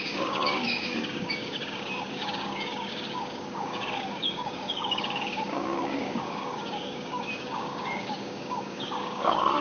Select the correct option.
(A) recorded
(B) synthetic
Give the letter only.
B